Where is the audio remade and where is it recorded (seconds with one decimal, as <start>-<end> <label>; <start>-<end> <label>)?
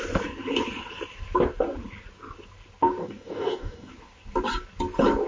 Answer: 0.0-3.0 recorded; 3.0-3.9 remade; 3.9-5.3 recorded